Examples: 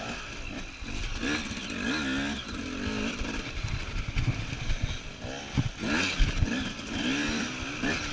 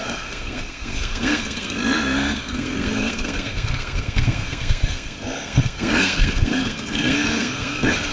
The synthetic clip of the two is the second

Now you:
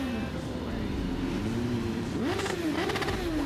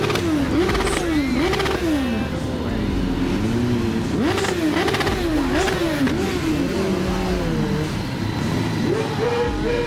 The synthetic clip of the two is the first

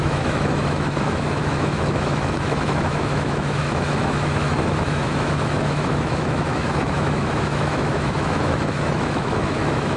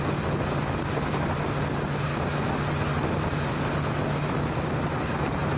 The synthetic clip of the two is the first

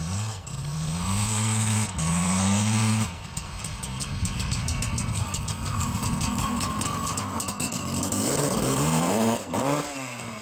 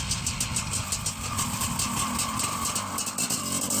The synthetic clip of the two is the first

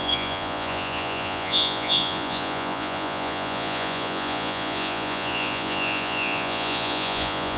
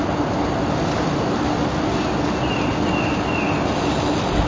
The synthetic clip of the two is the first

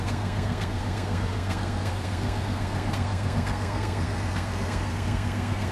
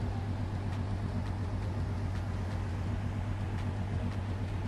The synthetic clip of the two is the first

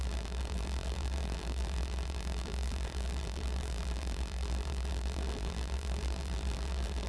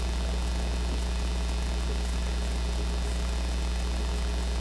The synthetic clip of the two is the first